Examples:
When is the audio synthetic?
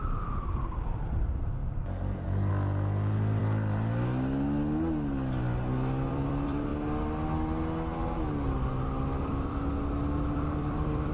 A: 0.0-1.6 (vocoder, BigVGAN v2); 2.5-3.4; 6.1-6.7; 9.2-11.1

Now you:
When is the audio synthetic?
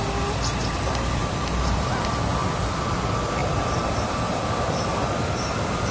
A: 1.2-1.9 (vocoder, BigVGAN v2); 3.4-4.3